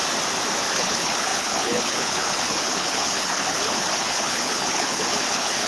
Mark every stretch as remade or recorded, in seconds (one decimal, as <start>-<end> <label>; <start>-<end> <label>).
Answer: 0.0-0.7 recorded; 0.7-5.7 remade